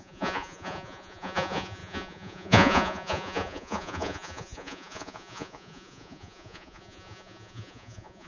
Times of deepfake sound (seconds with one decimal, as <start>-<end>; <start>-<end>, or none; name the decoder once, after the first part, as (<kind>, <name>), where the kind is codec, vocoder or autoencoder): 0.0-8.3 (vocoder, Vocos)